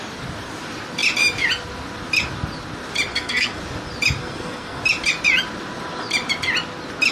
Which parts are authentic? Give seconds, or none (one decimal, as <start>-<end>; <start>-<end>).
0.0-3.1; 3.6-4.2; 4.8-7.1